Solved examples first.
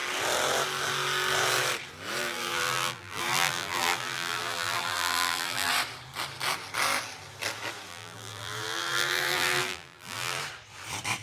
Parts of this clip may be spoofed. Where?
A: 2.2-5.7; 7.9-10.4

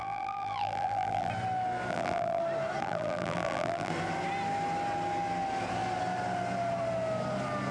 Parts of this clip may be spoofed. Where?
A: 0.0-1.3; 1.9-2.4; 2.8-3.9